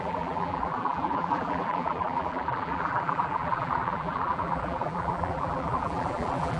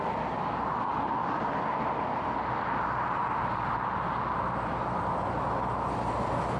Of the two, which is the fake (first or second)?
first